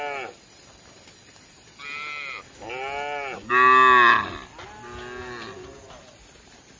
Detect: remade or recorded recorded